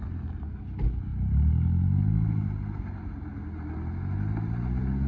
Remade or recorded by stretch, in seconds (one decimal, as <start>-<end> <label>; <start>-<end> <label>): 0.0-5.1 recorded